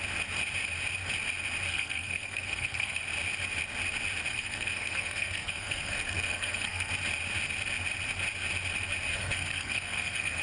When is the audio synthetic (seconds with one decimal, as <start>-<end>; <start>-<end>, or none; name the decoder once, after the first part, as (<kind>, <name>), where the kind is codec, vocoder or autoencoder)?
1.7-3.0 (codec, SNAC); 4.3-6.9; 9.1-10.4